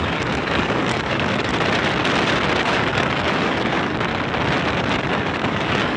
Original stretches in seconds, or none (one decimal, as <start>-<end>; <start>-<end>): 1.5-2.6; 4.1-5.1